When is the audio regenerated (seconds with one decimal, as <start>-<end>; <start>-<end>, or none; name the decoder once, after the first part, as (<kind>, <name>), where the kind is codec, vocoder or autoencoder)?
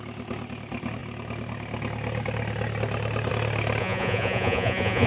3.8-5.1 (vocoder, Vocos)